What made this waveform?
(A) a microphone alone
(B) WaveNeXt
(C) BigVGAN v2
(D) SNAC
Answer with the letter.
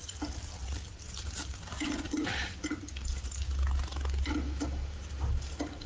A